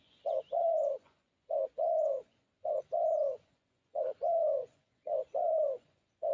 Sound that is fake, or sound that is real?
fake